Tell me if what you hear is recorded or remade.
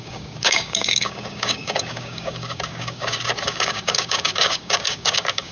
remade